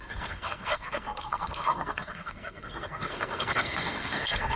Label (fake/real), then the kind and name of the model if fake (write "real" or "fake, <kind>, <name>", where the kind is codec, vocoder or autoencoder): fake, codec, SNAC